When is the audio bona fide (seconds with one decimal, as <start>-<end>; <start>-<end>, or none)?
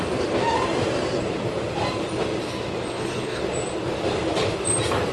0.0-2.9; 3.4-5.1